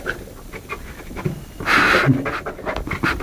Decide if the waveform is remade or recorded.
recorded